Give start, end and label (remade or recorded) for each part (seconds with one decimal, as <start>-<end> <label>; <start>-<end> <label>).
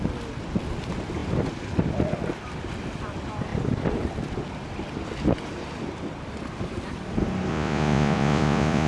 0.0-7.5 recorded; 7.5-8.9 remade